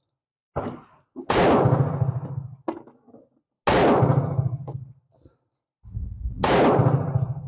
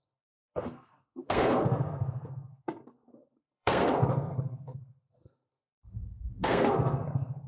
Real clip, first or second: first